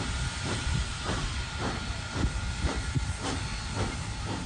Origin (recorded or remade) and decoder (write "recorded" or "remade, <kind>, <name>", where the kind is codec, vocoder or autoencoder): remade, vocoder, BigVGAN v2